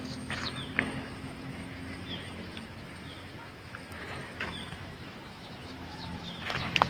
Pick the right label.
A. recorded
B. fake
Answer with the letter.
B